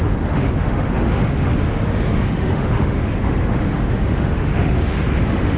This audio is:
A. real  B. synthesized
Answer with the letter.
B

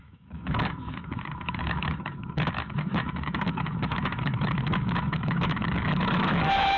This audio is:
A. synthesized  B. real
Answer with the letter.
A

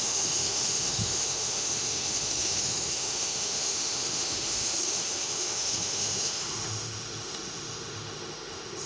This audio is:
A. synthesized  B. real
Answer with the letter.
A